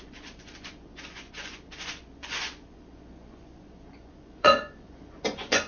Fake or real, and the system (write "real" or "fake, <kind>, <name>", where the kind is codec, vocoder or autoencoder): fake, vocoder, Vocos